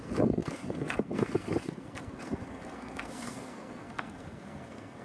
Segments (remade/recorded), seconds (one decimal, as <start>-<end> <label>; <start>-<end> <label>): 0.0-5.0 remade